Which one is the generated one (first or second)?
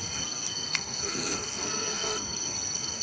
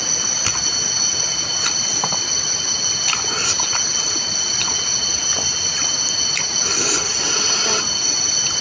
first